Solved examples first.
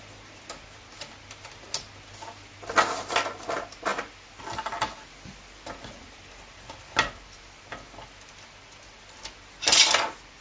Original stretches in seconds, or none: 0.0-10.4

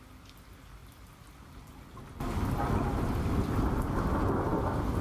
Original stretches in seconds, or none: 0.0-5.0

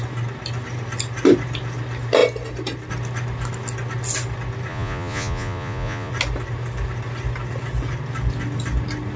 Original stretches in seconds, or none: 0.0-4.7; 6.1-9.2

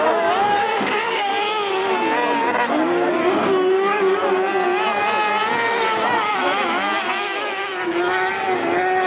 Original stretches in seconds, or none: 0.0-0.4; 1.3-3.2; 4.0-9.1

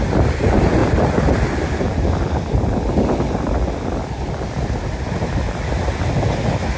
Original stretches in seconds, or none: 0.0-6.8